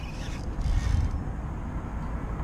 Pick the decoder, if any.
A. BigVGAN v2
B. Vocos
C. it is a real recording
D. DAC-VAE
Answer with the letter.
C